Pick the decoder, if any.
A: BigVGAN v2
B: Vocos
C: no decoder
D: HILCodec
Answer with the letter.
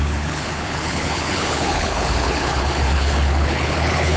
D